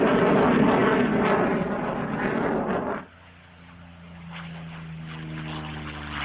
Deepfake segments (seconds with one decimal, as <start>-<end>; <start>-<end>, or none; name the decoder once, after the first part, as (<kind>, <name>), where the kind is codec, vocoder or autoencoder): none